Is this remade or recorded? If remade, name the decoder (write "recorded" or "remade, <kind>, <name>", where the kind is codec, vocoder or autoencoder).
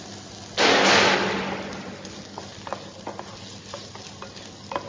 recorded